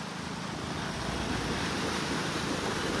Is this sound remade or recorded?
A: recorded